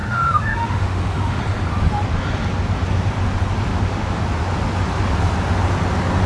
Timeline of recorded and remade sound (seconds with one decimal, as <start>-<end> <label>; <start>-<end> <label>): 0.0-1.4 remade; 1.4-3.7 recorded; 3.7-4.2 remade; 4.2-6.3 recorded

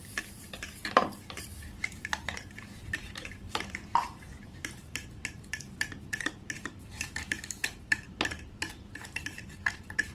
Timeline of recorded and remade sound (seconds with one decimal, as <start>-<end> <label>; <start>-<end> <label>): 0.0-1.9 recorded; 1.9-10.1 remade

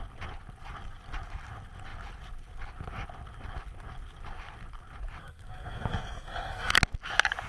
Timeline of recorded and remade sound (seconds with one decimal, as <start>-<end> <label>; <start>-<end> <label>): 0.0-5.2 recorded; 5.2-6.7 remade; 6.7-7.5 recorded

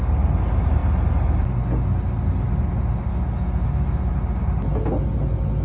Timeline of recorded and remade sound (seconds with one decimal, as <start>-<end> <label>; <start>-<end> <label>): 0.0-3.1 recorded; 3.1-4.1 remade; 4.1-5.6 recorded

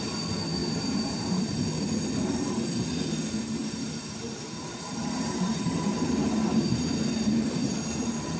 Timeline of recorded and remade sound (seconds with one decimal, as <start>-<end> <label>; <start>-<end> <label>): 0.0-0.6 recorded; 0.6-1.2 remade; 1.2-3.6 recorded; 3.6-8.4 remade